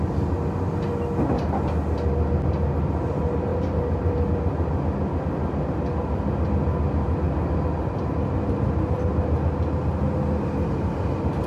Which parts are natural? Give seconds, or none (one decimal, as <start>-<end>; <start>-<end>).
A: 0.0-11.5